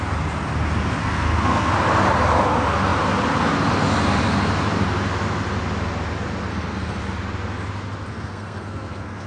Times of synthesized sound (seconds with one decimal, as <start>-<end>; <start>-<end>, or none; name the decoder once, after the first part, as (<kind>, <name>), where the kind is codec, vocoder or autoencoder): 1.0-1.7 (codec, SNAC); 6.5-7.0; 8.1-9.3

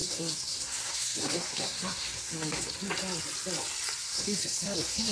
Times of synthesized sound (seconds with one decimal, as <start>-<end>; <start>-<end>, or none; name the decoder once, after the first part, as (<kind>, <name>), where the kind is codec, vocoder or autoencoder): 0.0-2.7 (codec, SNAC); 4.0-5.1

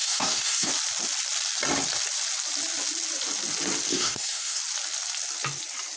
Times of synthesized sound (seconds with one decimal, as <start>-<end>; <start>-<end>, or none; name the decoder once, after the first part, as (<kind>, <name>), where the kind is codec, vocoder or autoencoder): 0.0-0.7 (codec, SNAC); 3.9-4.6

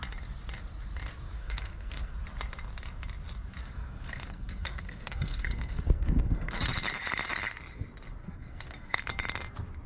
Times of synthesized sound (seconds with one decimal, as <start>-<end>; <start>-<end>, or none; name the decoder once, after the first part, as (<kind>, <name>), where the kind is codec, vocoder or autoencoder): 1.4-2.1 (codec, SNAC); 3.6-6.6; 8.2-9.0

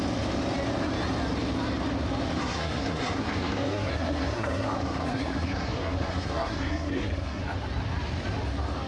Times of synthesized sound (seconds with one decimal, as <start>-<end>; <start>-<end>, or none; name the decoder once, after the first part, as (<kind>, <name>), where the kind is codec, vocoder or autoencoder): 2.4-7.4 (codec, SNAC)

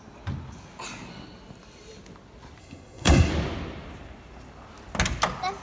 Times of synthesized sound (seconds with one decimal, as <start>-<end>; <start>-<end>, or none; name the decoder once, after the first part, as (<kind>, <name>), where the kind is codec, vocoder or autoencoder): 2.6-3.3 (codec, SNAC)